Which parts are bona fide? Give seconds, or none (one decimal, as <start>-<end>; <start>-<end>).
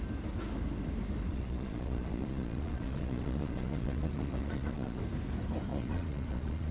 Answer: 0.0-1.3; 5.0-5.7